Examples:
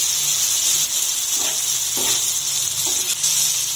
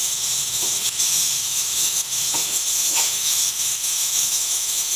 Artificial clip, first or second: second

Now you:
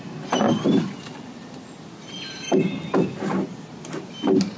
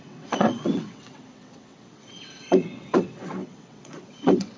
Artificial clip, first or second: second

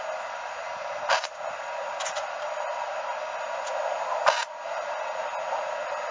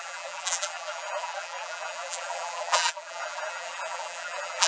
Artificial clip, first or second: second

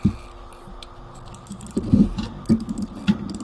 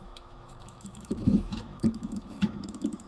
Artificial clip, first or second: second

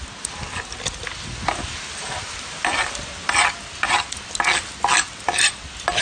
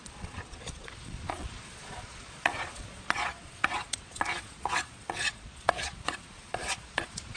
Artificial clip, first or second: second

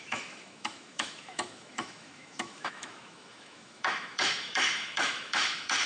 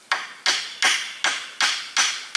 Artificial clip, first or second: first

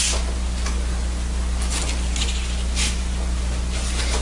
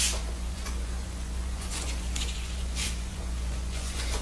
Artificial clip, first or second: second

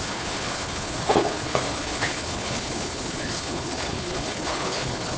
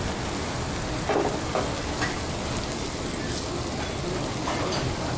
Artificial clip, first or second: first